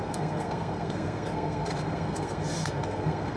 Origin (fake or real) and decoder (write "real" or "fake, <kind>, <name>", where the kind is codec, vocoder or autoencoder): fake, codec, SNAC